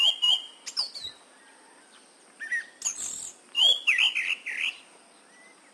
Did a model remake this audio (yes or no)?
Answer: no